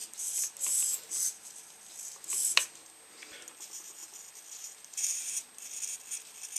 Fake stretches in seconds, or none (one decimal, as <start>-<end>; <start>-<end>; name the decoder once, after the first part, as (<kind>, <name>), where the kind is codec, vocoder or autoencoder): none